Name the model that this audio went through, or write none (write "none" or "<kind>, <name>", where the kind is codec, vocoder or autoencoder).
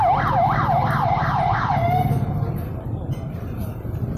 none